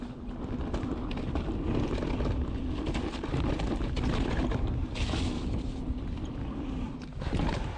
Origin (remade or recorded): recorded